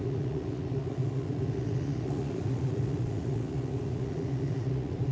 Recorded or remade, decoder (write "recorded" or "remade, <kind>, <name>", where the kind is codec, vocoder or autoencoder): remade, vocoder, Vocos